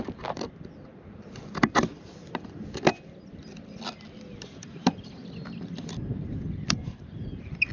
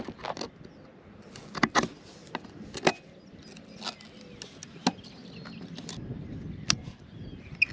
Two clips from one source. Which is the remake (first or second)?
first